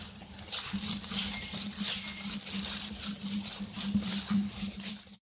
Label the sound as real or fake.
real